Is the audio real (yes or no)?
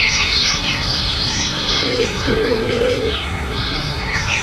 no